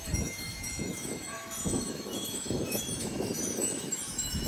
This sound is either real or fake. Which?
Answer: fake